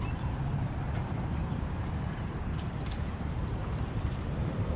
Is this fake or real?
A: fake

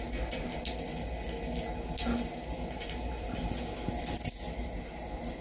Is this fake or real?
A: real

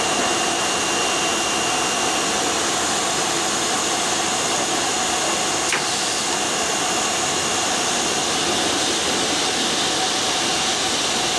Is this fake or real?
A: real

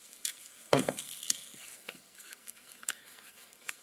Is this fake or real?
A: fake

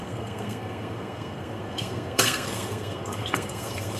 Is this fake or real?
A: fake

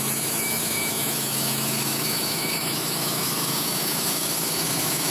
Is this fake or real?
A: fake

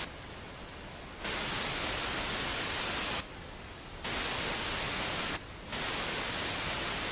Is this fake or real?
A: real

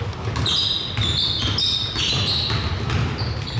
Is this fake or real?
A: real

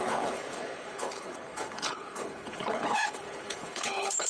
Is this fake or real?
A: fake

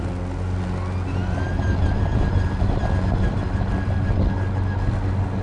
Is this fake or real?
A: real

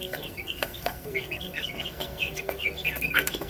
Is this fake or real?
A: fake